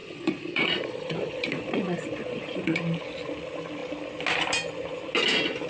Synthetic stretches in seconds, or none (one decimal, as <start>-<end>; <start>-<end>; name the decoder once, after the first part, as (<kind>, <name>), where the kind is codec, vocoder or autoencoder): 0.0-3.0 (vocoder, Vocos)